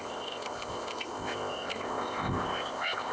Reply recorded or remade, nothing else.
remade